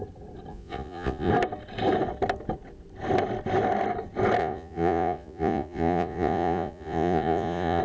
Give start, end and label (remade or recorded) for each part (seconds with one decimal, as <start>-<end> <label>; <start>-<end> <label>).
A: 0.0-0.5 recorded; 0.5-1.3 remade; 1.3-4.4 recorded; 4.4-7.8 remade